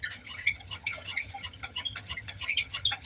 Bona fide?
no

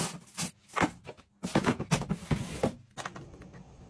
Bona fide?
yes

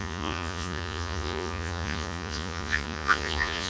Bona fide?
no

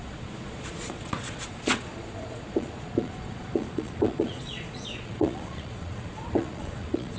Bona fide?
no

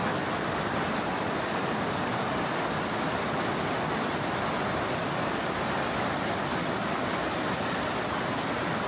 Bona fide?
yes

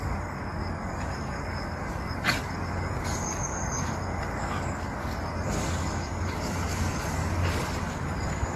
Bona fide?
no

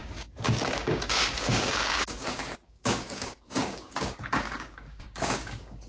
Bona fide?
no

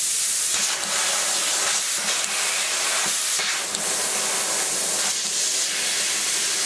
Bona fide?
yes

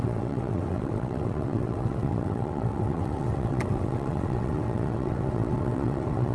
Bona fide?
no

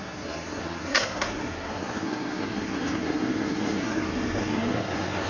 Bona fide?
no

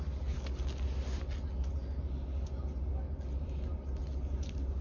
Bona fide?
yes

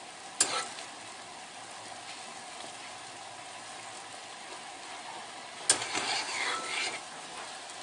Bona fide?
yes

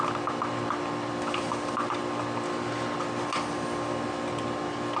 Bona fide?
yes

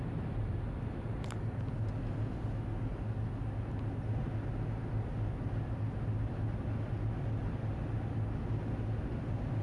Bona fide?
yes